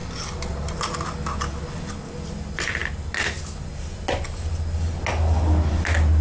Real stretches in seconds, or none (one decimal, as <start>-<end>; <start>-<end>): 0.0-6.2